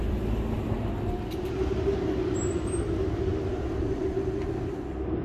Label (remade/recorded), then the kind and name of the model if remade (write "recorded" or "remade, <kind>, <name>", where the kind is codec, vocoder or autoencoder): recorded